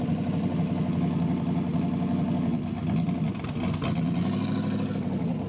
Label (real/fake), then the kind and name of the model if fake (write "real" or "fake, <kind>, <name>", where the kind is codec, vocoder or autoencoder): real